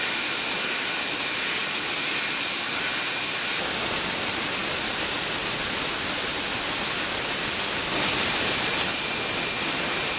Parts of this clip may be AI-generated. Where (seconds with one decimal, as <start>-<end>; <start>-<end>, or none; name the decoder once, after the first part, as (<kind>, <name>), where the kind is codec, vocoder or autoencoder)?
none

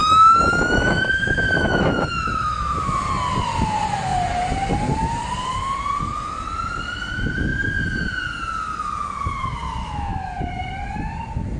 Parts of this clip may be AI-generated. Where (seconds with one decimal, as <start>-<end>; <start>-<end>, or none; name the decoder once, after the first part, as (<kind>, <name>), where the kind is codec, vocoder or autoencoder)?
0.0-3.0 (autoencoder, DAC-VAE); 9.8-10.4

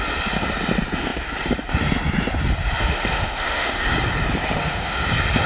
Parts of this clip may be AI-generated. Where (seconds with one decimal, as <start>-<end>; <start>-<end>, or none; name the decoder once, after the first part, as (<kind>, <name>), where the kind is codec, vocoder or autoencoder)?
2.8-3.9 (autoencoder, DAC-VAE); 4.6-5.1

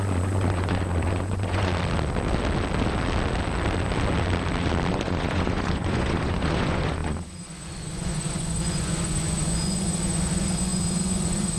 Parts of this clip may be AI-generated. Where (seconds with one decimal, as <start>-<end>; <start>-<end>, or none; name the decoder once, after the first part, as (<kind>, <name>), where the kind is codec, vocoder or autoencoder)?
0.0-1.7 (vocoder, Vocos); 4.9-11.6